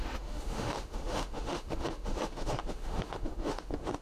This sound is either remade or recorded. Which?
remade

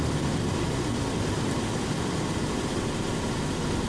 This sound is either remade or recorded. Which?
recorded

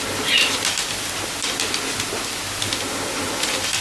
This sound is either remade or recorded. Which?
recorded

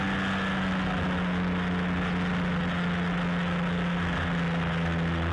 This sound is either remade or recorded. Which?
recorded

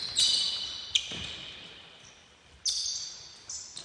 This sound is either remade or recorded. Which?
recorded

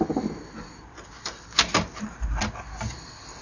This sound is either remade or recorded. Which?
recorded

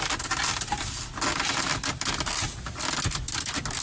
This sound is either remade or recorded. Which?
recorded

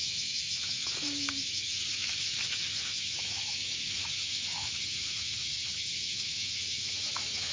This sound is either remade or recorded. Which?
remade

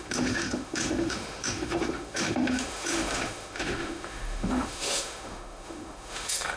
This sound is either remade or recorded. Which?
remade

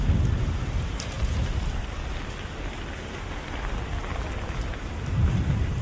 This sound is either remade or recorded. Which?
recorded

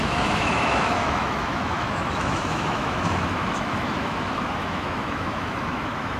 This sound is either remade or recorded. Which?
remade